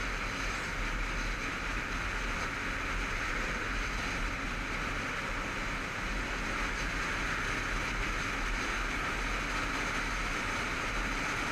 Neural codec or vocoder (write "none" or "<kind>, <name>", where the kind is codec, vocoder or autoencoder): none